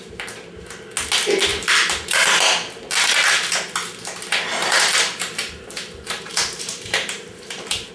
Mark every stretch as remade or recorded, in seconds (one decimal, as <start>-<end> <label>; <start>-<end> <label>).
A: 0.0-1.5 recorded; 1.5-2.4 remade; 2.4-4.6 recorded; 4.6-7.9 remade